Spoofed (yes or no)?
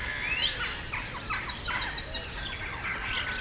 no